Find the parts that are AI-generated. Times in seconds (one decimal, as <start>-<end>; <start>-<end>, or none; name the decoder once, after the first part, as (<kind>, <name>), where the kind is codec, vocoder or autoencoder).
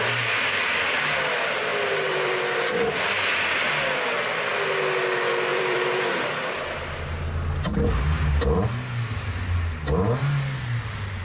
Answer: 1.7-3.7 (vocoder, BigVGAN v2); 5.5-6.3